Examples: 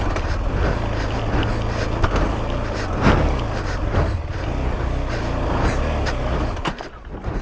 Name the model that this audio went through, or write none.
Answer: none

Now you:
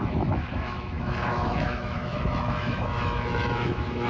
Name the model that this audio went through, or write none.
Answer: autoencoder, DAC-VAE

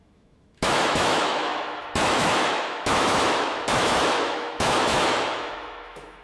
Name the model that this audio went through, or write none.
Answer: autoencoder, DAC-VAE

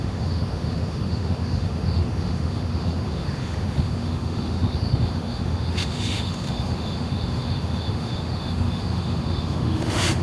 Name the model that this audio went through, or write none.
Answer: autoencoder, DAC-VAE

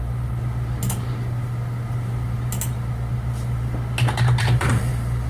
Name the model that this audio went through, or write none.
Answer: none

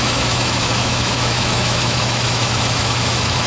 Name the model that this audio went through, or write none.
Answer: autoencoder, DAC-VAE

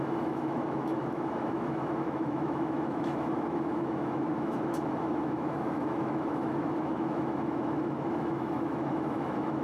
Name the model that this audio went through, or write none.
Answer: autoencoder, DAC-VAE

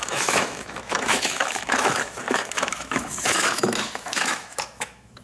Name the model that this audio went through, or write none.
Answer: autoencoder, DAC-VAE